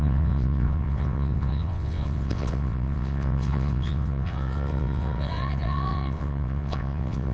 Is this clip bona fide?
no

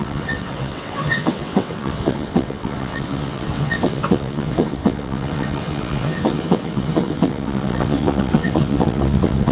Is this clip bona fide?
no